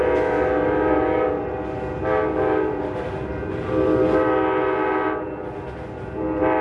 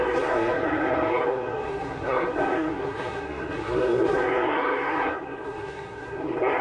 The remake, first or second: second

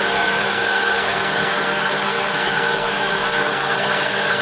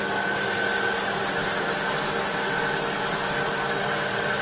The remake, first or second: first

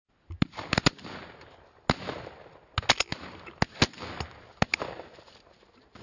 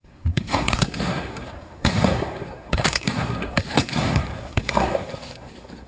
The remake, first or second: second